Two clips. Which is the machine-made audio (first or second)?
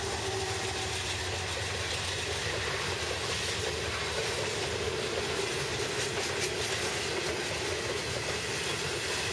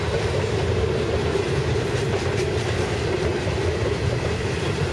second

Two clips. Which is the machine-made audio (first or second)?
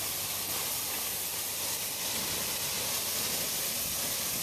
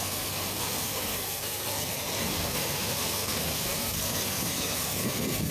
second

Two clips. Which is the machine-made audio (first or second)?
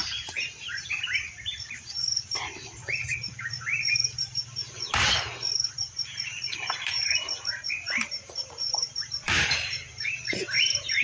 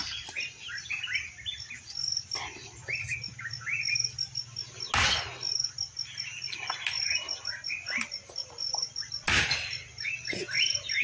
first